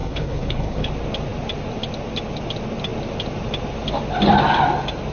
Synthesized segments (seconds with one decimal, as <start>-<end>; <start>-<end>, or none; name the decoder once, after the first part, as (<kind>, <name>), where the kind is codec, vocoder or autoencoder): 0.0-0.9 (codec, HILCodec)